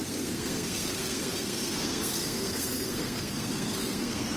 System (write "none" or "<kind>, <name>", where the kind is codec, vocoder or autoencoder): codec, SNAC